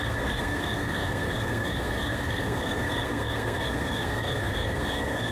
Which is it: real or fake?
fake